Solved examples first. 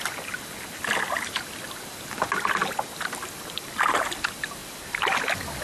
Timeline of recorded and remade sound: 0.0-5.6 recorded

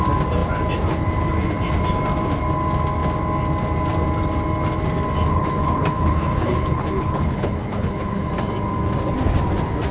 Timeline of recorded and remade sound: 0.0-5.3 recorded; 5.3-8.3 remade; 8.3-9.9 recorded

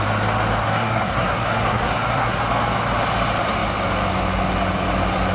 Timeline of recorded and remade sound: 0.0-0.6 recorded; 0.6-2.4 remade; 2.4-5.3 recorded

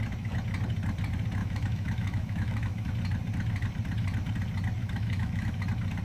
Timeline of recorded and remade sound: 0.0-1.4 recorded; 1.4-2.9 remade; 2.9-4.8 recorded; 4.8-5.6 remade; 5.6-6.0 recorded